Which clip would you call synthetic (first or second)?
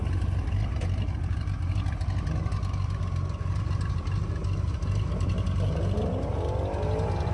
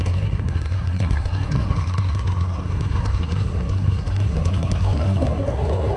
second